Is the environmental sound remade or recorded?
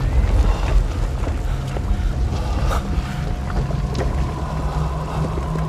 recorded